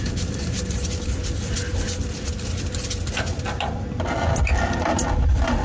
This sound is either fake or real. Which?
real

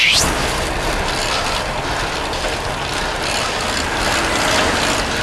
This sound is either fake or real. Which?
real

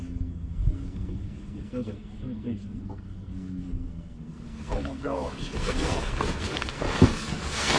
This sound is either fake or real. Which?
fake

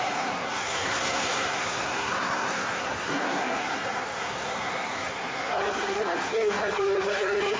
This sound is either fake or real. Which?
fake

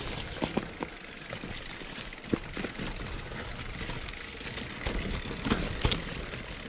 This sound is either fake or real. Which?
real